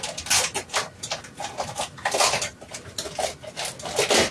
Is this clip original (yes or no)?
yes